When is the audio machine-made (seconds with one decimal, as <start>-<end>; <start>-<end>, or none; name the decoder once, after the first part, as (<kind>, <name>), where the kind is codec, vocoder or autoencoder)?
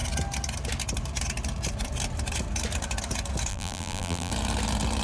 3.5-4.3 (vocoder, BigVGAN v2)